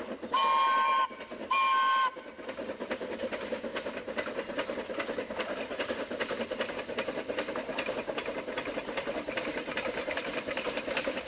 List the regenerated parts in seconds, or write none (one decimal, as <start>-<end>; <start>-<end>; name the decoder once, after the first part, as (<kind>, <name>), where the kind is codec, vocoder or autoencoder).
none

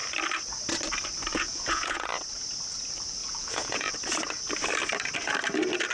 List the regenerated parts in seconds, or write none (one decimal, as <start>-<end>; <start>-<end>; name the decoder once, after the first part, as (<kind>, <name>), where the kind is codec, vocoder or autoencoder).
1.3-2.1 (vocoder, Vocos); 3.2-3.9

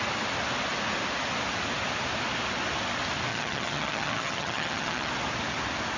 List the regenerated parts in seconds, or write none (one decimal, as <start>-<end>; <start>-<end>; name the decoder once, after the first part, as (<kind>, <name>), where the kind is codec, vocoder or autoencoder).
3.3-5.1 (vocoder, HiFi-GAN)